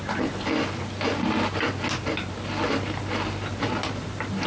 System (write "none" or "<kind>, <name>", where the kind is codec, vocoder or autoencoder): none